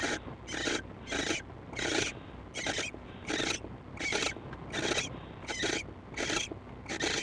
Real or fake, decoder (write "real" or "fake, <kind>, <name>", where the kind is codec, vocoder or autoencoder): real